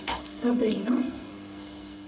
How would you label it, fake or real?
fake